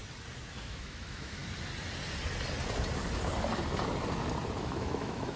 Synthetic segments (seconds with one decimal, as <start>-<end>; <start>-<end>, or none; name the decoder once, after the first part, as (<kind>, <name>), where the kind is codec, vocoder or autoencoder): 0.6-1.4 (autoencoder, DAC-VAE); 4.6-5.4